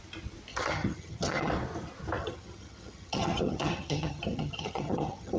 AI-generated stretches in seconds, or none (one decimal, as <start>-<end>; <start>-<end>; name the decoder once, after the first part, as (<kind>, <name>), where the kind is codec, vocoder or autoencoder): 0.5-1.5 (vocoder, HiFi-GAN); 2.2-5.4